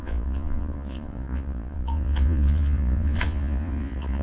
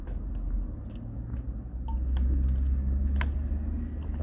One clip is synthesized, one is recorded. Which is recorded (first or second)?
second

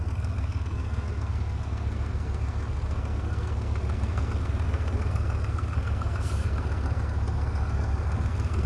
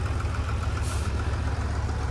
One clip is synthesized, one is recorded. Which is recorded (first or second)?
second